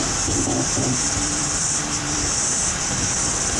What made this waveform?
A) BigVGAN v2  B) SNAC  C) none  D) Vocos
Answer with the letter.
A